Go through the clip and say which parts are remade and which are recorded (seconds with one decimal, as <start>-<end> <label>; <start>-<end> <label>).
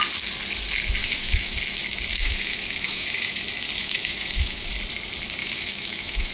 0.0-1.0 recorded; 1.0-1.6 remade; 1.6-2.1 recorded; 2.1-3.4 remade; 3.4-3.8 recorded; 3.8-4.7 remade; 4.7-5.4 recorded; 5.4-6.3 remade